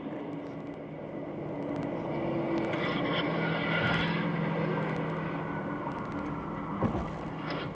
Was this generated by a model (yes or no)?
no